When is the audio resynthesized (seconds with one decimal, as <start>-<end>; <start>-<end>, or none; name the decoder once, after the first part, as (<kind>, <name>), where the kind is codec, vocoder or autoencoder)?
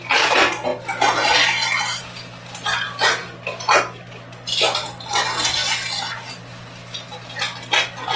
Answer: none